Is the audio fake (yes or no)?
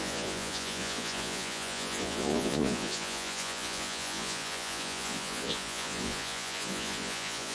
yes